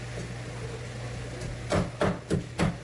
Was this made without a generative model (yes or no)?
yes